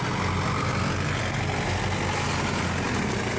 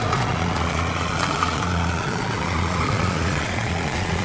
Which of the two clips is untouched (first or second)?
first